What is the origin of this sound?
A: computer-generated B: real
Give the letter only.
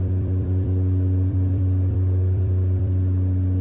A